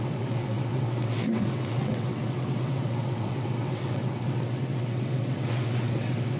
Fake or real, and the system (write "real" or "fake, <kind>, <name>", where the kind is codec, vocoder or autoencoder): fake, vocoder, WaveNeXt